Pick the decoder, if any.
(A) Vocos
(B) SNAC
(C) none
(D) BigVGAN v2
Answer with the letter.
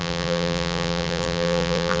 D